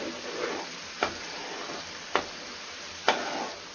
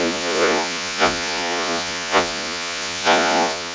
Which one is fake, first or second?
second